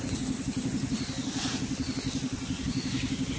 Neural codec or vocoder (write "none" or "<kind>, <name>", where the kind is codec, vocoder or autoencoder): none